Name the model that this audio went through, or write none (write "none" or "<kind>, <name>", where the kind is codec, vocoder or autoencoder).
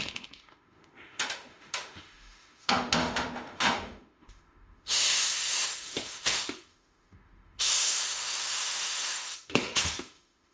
autoencoder, DAC-VAE